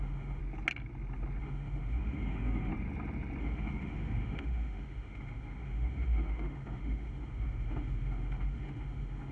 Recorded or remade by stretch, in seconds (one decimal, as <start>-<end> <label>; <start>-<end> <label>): 0.0-0.4 remade; 0.4-1.4 recorded; 1.4-2.7 remade; 2.7-3.4 recorded; 3.4-9.3 remade